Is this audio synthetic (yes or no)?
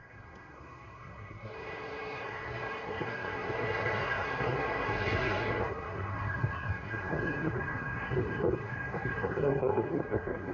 yes